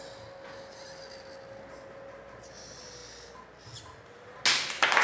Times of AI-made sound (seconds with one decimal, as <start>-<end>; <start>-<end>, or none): none